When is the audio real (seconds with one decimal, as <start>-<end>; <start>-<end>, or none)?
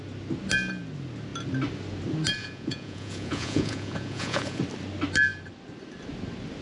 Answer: 0.0-2.4; 4.6-6.6